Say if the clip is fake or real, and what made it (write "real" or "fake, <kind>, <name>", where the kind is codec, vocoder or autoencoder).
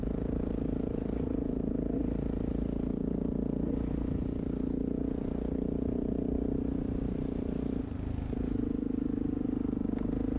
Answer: real